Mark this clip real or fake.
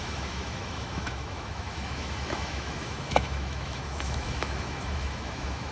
fake